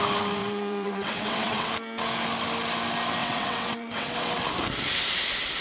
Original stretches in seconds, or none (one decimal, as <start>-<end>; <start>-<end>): 0.0-0.4; 1.7-3.2; 4.4-5.6